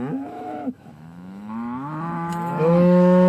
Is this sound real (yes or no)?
no